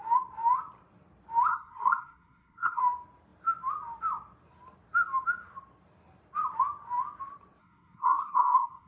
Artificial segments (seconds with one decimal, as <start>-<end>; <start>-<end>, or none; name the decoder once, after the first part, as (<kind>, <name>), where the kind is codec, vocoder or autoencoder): 1.5-2.8 (codec, SNAC); 7.6-8.9

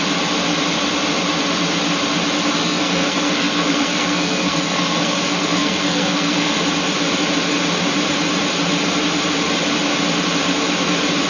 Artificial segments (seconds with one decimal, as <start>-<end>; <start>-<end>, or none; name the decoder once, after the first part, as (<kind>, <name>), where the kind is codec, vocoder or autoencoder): 2.6-6.6 (codec, SNAC)

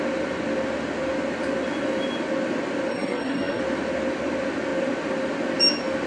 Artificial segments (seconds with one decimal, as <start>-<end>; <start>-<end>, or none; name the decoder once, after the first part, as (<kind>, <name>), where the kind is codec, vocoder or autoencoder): 2.9-3.6 (codec, SNAC)

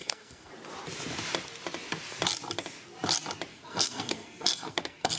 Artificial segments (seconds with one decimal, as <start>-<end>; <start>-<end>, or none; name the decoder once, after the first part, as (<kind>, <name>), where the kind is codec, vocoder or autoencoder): 0.0-0.5 (codec, SNAC); 3.5-5.2

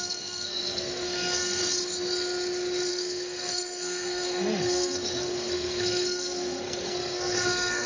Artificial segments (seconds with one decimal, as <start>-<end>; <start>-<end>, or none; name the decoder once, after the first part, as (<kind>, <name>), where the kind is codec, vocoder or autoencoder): 0.0-1.6 (codec, SNAC); 2.9-7.9

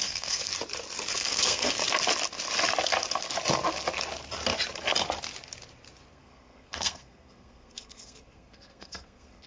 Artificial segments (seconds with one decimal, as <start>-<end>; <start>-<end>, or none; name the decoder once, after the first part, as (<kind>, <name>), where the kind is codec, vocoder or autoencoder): 0.0-0.5 (codec, SNAC); 1.1-1.8; 6.1-9.5

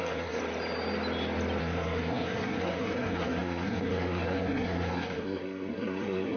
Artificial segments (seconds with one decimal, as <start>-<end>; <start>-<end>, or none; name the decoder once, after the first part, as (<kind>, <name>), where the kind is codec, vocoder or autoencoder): 0.0-0.4 (codec, SNAC); 1.6-6.4

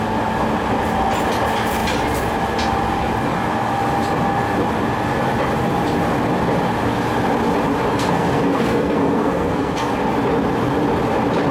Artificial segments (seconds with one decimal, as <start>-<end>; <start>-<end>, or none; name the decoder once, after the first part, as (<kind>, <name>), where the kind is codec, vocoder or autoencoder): 7.9-9.9 (codec, SNAC)